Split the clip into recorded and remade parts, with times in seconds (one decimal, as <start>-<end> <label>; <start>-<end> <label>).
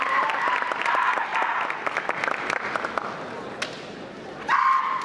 0.0-5.0 recorded